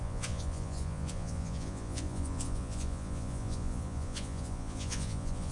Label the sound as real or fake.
fake